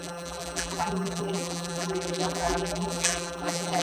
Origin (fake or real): fake